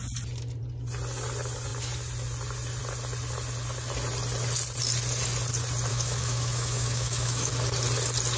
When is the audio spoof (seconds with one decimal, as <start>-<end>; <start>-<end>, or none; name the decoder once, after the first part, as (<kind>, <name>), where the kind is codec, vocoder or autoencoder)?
5.9-7.5 (autoencoder, DAC-VAE)